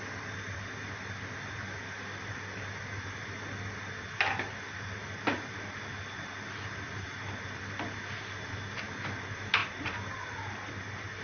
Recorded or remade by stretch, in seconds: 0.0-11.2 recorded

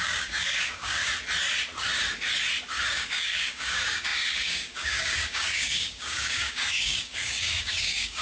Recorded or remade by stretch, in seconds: 0.0-1.0 remade; 1.0-2.9 recorded; 2.9-8.2 remade

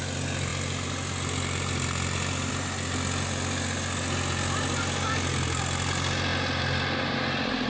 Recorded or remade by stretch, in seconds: 0.0-7.7 recorded

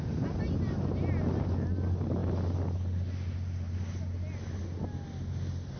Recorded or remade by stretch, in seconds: 0.0-5.8 recorded